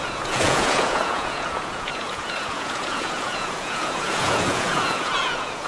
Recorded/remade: remade